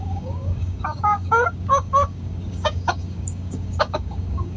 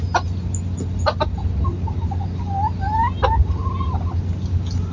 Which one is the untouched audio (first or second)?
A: second